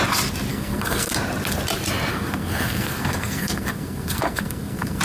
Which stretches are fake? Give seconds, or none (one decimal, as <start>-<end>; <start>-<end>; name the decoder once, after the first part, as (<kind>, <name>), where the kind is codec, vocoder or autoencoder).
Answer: 0.5-1.1 (codec, SNAC); 2.1-5.0